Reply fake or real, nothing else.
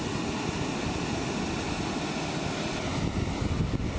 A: real